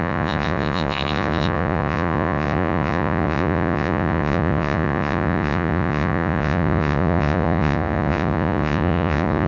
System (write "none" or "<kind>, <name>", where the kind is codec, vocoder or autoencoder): vocoder, Vocos